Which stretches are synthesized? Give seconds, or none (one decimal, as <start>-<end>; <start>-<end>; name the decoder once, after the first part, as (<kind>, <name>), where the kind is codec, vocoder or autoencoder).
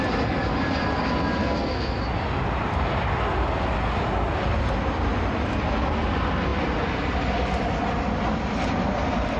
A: 1.4-2.0 (codec, SNAC)